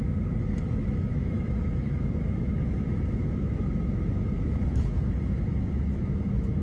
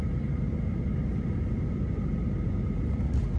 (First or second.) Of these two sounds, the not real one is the first